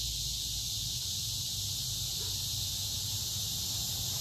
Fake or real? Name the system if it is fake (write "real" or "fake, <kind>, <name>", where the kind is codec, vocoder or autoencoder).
real